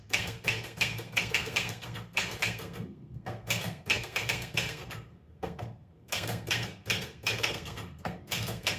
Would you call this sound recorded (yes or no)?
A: no